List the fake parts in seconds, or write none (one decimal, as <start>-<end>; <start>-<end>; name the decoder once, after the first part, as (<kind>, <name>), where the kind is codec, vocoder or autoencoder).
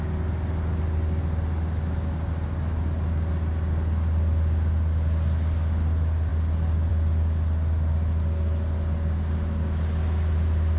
none